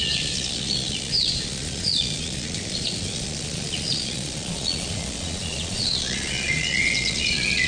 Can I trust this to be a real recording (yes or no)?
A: no